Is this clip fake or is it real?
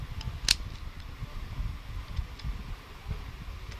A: real